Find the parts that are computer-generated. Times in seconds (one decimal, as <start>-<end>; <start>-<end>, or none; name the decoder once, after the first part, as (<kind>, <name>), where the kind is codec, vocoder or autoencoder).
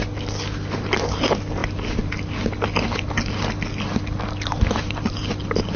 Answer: none